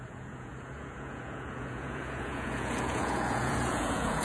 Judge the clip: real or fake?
fake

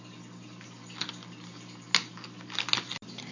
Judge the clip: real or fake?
real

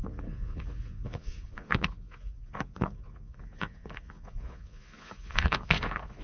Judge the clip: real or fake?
fake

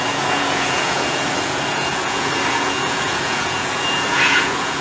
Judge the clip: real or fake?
fake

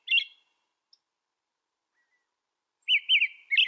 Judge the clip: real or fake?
real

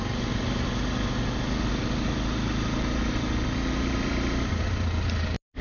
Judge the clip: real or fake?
real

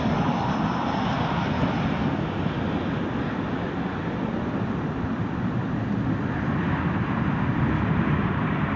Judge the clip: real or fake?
real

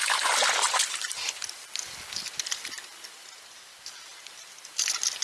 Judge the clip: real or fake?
real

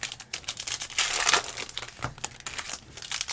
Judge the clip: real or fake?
real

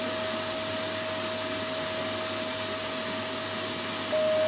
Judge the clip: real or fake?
real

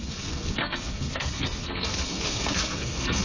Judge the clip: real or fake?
fake